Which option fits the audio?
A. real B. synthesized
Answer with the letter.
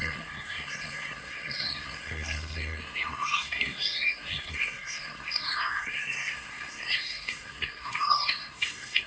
B